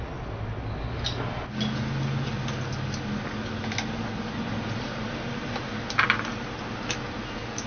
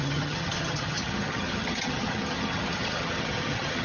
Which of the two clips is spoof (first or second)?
second